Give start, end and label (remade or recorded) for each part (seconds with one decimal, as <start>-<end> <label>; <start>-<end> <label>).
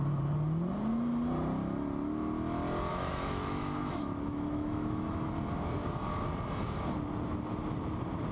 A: 0.0-2.9 recorded; 2.9-5.3 remade; 5.3-8.3 recorded